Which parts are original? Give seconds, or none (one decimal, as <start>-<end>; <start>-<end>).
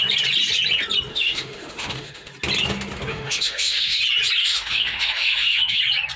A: 0.0-1.1; 2.3-3.1; 4.0-4.4; 5.8-6.2